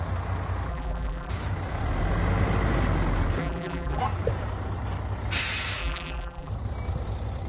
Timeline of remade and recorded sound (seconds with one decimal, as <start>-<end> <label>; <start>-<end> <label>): 0.0-0.7 recorded; 0.7-1.3 remade; 1.3-3.4 recorded; 3.4-4.0 remade; 4.0-5.8 recorded; 5.8-6.5 remade; 6.5-7.5 recorded